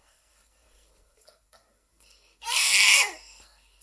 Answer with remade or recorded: remade